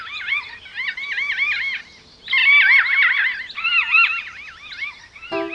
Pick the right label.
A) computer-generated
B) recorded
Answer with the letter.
B